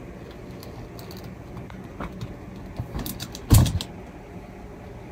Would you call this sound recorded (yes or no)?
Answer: yes